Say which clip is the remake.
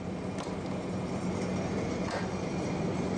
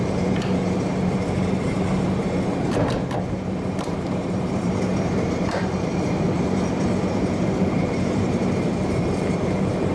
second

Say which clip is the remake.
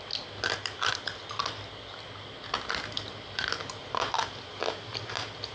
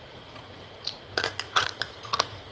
second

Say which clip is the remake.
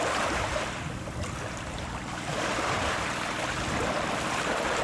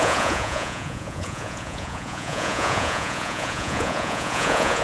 second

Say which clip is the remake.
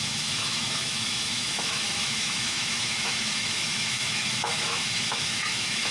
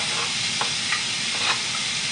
first